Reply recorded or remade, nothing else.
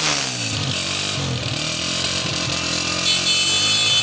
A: recorded